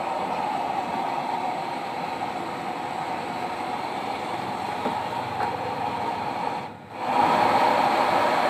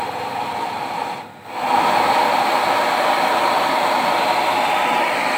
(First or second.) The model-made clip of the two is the first